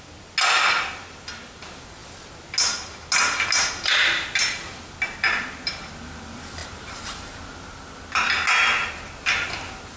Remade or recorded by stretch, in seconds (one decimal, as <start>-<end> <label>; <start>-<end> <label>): 0.0-6.6 recorded; 6.6-7.4 remade; 7.4-10.0 recorded

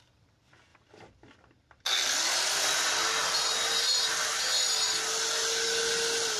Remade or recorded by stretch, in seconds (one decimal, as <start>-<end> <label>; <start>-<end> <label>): 0.0-0.7 recorded; 0.7-2.4 remade; 2.4-3.2 recorded; 3.2-4.3 remade; 4.3-6.4 recorded

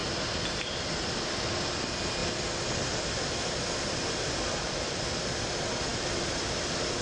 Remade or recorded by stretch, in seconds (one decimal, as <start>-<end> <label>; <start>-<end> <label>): 0.0-0.8 recorded; 0.8-7.0 remade

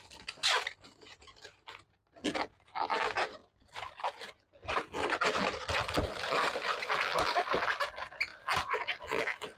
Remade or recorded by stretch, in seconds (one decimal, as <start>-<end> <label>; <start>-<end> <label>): 0.0-9.6 recorded

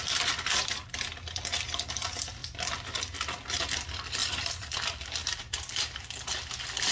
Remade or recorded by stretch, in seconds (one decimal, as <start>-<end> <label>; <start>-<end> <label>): 0.0-2.4 recorded; 2.4-3.0 remade; 3.0-4.2 recorded; 4.2-4.7 remade; 4.7-5.2 recorded; 5.2-5.7 remade; 5.7-6.9 recorded

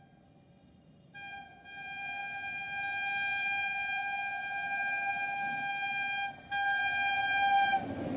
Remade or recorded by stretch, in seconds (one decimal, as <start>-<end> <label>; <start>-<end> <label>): 0.0-8.2 recorded

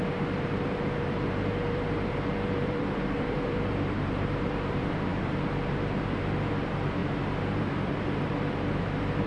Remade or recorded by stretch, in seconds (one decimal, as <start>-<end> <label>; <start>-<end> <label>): 0.0-9.3 remade